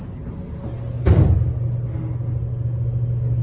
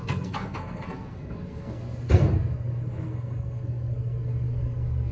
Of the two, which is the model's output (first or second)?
second